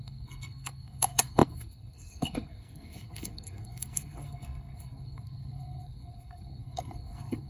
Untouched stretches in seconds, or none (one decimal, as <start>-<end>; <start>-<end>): none